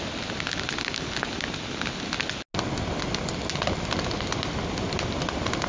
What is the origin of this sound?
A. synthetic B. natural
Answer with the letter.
B